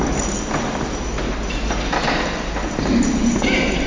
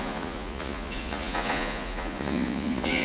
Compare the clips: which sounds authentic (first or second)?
first